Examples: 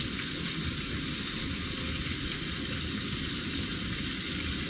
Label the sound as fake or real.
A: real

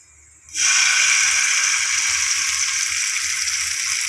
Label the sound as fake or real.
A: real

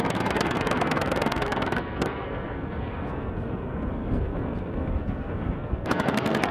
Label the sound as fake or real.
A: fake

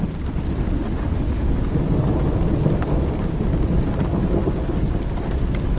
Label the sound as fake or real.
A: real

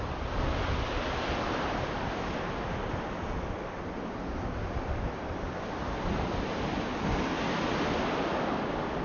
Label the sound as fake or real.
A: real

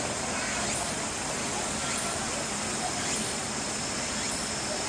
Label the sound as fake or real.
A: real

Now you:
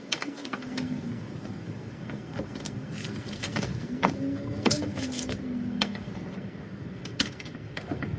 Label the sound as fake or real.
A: fake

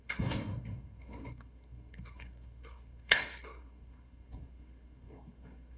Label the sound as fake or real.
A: fake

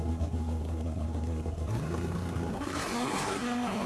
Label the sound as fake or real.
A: fake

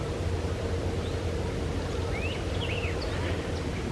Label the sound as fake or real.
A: real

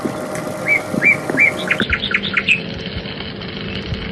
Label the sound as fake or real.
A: real